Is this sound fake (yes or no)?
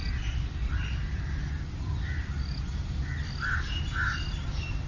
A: no